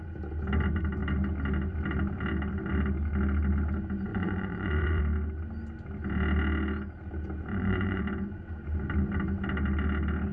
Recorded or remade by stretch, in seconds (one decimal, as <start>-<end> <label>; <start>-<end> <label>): 0.0-4.1 recorded; 4.1-5.0 remade; 5.0-7.5 recorded; 7.5-8.0 remade; 8.0-10.3 recorded